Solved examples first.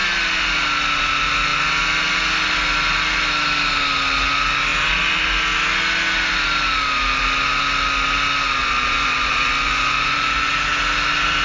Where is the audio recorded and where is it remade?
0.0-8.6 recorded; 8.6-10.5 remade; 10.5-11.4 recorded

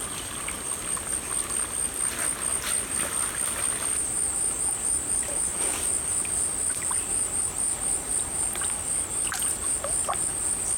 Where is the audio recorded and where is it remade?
0.0-10.8 recorded

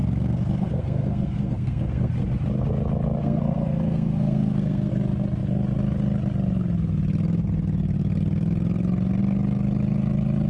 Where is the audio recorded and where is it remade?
0.0-2.1 remade; 2.1-3.2 recorded; 3.2-4.9 remade; 4.9-10.5 recorded